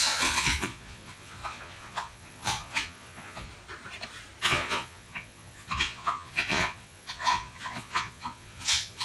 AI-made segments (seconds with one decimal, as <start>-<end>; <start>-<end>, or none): 0.0-3.5; 4.4-9.0